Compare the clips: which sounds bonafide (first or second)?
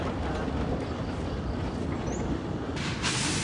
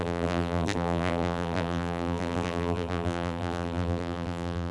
first